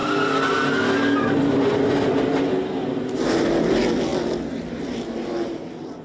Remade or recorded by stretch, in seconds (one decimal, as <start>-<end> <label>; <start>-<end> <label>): 0.0-6.0 recorded